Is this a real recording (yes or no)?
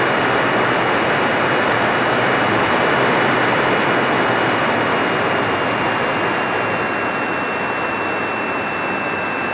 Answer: yes